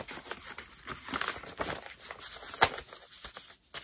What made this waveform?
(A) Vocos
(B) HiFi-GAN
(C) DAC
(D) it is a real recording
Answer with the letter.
D